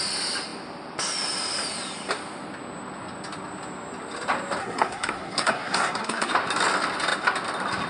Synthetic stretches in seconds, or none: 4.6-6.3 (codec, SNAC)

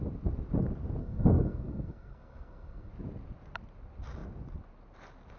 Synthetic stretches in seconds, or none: 1.0-2.9 (codec, SNAC)

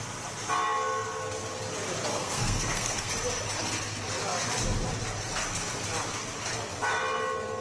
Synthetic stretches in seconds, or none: 2.1-3.1 (codec, SNAC)

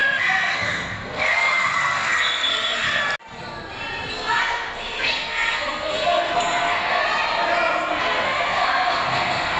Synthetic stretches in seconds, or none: 0.0-3.0 (codec, SNAC); 4.1-7.0; 8.0-9.6